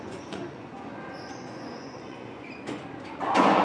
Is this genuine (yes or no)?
no